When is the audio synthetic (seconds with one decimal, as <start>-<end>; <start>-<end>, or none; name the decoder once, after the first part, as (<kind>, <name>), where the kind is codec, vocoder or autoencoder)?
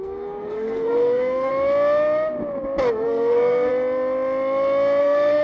0.0-1.5 (codec, SNAC); 2.9-3.7; 5.0-5.4